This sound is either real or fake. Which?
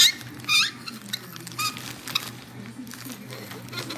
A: real